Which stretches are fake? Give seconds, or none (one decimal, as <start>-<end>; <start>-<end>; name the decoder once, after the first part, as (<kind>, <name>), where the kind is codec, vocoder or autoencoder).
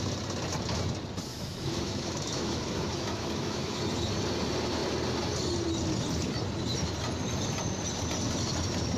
1.3-3.8 (autoencoder, DAC-VAE)